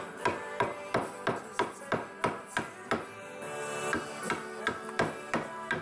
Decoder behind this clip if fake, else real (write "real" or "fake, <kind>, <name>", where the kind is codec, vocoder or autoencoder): real